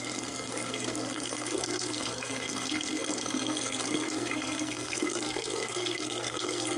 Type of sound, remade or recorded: remade